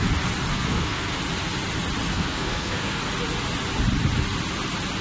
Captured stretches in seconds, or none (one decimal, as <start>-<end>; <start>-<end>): 0.0-0.5; 1.2-2.1; 3.0-5.0